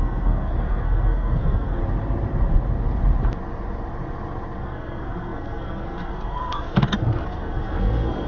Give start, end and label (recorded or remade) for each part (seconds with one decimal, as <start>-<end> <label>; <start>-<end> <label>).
0.0-1.8 remade; 1.8-4.6 recorded; 4.6-8.3 remade